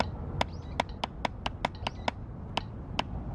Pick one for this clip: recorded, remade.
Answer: recorded